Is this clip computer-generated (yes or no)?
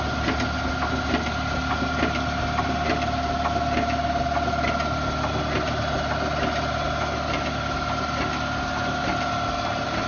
no